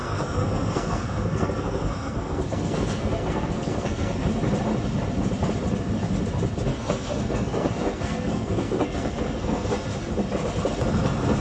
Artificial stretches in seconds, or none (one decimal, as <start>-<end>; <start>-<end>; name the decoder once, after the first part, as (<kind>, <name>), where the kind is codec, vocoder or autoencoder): 0.0-4.3 (codec, SNAC); 6.7-9.7